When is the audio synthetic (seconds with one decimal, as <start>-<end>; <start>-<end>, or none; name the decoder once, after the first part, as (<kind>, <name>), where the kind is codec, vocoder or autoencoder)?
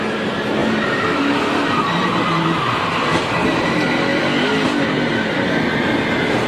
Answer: none